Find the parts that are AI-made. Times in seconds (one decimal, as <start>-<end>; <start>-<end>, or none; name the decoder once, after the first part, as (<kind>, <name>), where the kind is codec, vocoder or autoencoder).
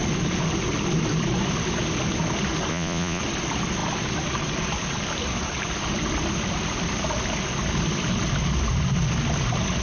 2.7-3.2 (vocoder, Vocos)